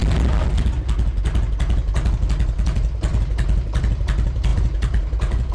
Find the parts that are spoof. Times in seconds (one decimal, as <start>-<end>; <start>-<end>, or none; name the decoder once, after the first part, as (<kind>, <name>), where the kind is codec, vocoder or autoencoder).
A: 4.5-5.5 (vocoder, BigVGAN v2)